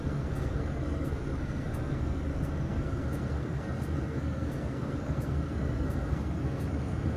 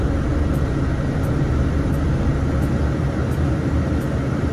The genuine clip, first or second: second